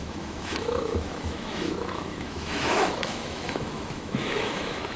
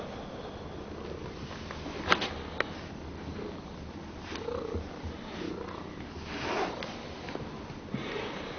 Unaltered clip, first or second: second